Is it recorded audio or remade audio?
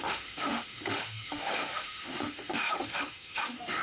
remade